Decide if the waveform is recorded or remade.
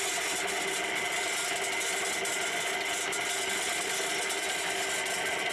recorded